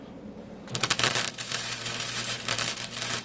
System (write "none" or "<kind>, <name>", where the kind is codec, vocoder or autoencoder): vocoder, BigVGAN v2